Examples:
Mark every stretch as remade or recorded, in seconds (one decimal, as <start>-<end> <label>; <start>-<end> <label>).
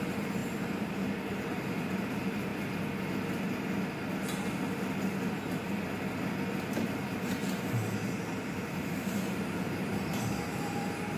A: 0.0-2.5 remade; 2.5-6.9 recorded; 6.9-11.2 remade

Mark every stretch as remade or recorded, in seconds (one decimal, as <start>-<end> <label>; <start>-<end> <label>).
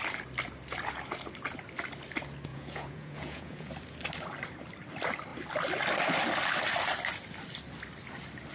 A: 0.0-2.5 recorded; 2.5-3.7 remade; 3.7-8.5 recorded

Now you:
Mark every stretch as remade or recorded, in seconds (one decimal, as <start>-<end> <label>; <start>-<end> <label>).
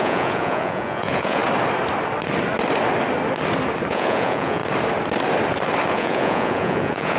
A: 0.0-1.4 remade; 1.4-3.9 recorded; 3.9-4.6 remade; 4.6-5.9 recorded; 5.9-7.2 remade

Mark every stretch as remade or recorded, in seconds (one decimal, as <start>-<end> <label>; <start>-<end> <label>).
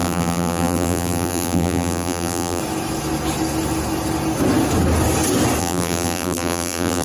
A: 0.0-2.6 remade; 2.6-5.6 recorded; 5.6-7.0 remade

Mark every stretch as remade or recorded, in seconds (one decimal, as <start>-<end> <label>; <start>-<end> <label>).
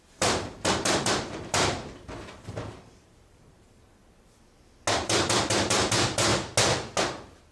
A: 0.0-4.0 remade; 4.0-4.9 recorded; 4.9-6.3 remade; 6.3-7.5 recorded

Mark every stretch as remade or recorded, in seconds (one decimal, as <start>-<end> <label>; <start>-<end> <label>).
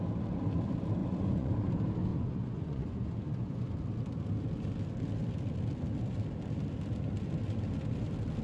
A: 0.0-1.0 recorded; 1.0-1.7 remade; 1.7-2.1 recorded; 2.1-3.7 remade; 3.7-8.4 recorded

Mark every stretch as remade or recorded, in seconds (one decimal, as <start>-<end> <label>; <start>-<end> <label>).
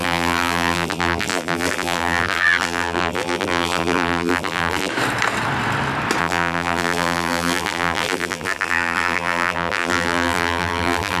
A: 0.0-4.9 remade; 4.9-6.2 recorded; 6.2-11.2 remade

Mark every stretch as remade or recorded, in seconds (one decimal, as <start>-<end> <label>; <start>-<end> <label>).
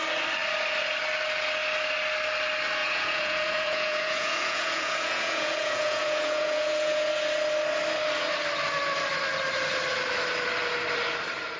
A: 0.0-2.8 recorded; 2.8-7.1 remade; 7.1-11.6 recorded